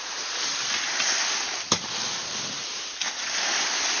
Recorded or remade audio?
recorded